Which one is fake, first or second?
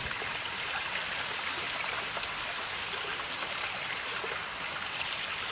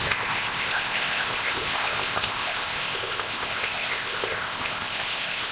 second